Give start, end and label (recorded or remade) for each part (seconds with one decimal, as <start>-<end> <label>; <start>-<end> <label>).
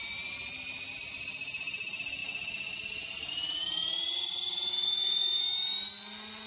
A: 0.0-4.7 recorded; 4.7-5.4 remade; 5.4-6.5 recorded